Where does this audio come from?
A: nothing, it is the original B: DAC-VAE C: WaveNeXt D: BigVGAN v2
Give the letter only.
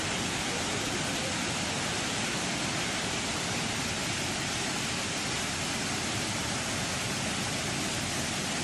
A